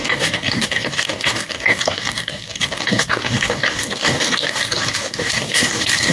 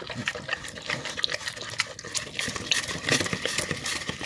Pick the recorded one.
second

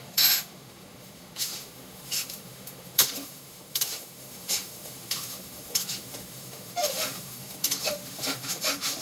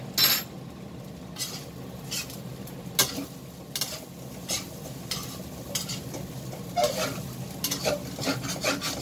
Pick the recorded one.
second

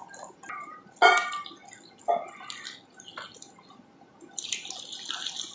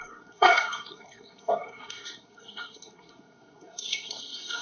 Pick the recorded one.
first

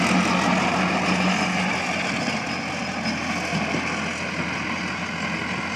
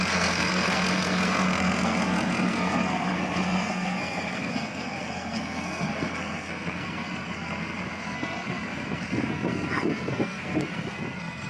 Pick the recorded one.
first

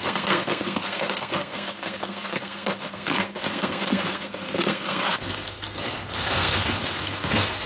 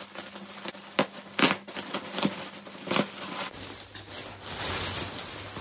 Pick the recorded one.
second